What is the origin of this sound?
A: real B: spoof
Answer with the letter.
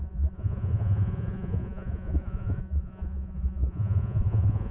B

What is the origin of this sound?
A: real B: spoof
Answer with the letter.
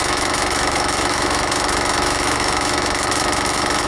B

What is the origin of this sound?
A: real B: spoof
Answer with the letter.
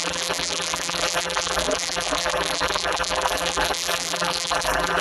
B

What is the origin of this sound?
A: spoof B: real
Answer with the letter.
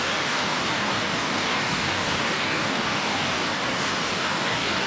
A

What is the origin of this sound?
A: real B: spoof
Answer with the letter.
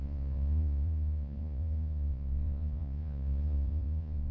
B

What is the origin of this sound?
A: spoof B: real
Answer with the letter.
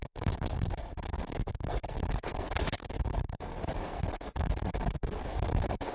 A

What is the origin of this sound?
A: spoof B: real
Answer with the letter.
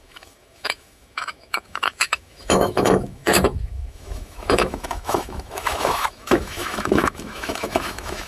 A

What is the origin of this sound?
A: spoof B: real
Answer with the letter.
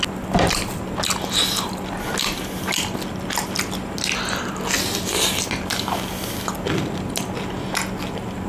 B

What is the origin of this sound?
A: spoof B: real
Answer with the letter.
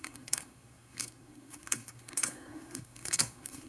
A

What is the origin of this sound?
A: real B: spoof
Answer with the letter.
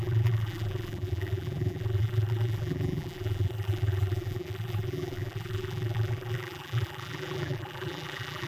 B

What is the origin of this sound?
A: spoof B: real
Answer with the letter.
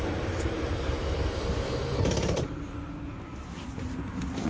B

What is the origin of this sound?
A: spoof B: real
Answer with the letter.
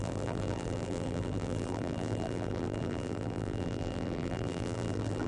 A